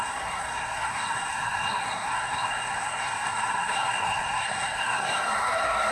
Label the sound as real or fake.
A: fake